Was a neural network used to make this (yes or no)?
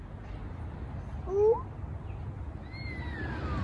no